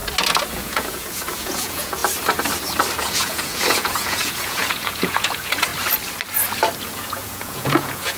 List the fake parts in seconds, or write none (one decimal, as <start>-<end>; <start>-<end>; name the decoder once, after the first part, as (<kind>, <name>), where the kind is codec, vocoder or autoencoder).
0.5-2.0 (vocoder, Vocos); 3.0-5.7; 6.8-8.2